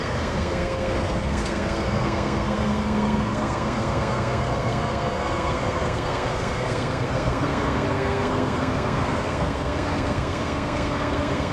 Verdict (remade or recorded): remade